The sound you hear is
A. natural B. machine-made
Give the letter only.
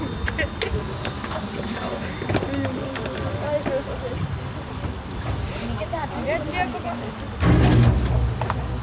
A